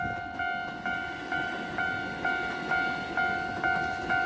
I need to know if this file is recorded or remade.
recorded